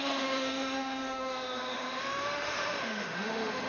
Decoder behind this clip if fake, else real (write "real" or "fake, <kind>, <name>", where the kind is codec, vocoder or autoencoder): fake, autoencoder, DAC-VAE